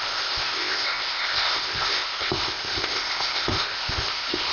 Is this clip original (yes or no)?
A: no